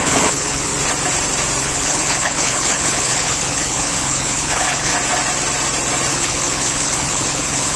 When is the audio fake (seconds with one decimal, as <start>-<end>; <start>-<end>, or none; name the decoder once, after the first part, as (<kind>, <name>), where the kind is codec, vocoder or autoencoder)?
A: 0.0-0.7 (codec, HILCodec); 1.6-4.9; 6.1-7.8